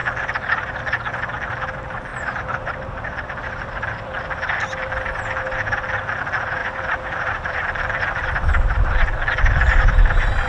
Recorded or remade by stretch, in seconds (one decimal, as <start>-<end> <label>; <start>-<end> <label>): 0.0-0.8 remade; 0.8-2.1 recorded; 2.1-3.0 remade; 3.0-6.6 recorded; 6.6-9.1 remade; 9.1-10.5 recorded